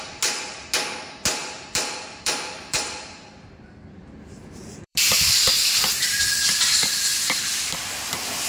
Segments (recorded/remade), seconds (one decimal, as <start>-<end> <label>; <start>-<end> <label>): 0.0-1.4 recorded; 1.4-5.9 remade; 5.9-8.5 recorded